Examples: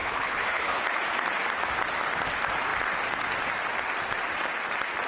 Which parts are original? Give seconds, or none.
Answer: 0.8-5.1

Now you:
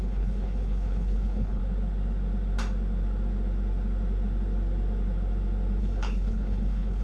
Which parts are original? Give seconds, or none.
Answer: 1.6-5.8

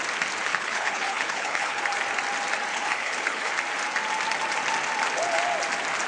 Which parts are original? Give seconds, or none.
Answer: 0.0-0.5; 1.8-2.7; 3.5-6.1